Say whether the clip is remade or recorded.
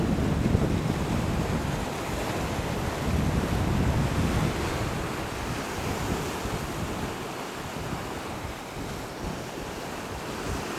recorded